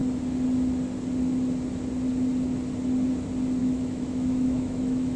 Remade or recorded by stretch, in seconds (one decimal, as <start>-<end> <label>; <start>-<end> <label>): 0.0-3.6 recorded; 3.6-5.2 remade